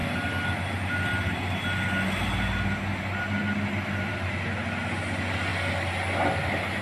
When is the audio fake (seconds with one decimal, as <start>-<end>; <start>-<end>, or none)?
none